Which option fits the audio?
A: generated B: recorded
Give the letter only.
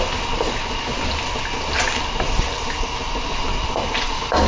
B